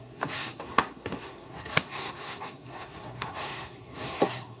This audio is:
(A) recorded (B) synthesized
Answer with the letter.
B